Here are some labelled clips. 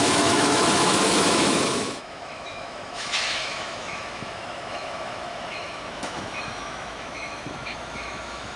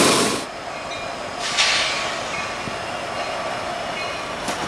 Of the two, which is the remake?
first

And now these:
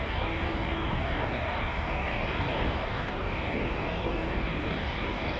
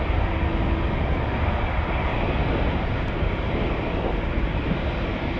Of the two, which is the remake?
first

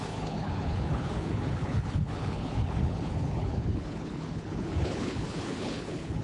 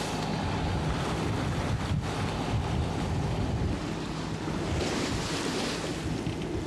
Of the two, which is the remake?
first